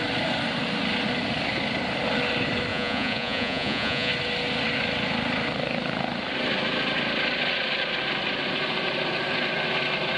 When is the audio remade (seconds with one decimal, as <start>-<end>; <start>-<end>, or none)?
2.7-4.1